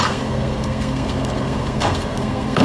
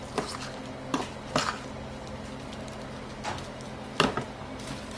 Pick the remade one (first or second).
first